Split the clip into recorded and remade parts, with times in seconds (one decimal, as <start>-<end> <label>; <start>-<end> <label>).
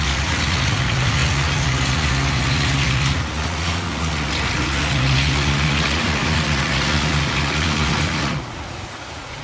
0.0-9.4 remade